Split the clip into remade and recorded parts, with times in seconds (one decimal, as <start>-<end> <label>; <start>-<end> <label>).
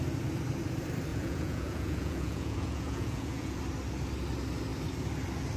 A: 0.0-1.1 recorded; 1.1-3.6 remade; 3.6-5.6 recorded